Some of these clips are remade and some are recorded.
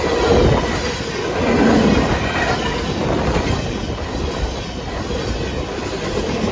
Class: recorded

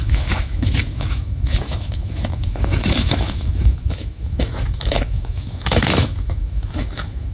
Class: remade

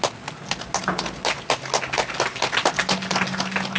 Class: recorded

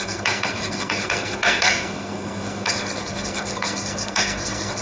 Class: remade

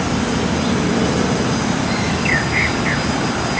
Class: recorded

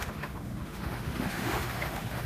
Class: remade